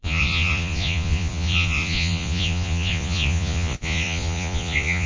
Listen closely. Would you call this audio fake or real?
fake